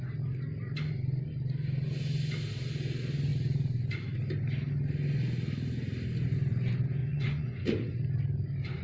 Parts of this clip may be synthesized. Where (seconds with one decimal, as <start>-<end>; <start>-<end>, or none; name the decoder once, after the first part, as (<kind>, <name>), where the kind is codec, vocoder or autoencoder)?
7.0-7.9 (vocoder, Vocos)